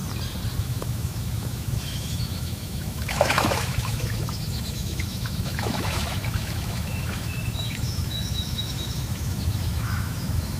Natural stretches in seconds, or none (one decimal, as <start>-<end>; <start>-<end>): 0.0-0.6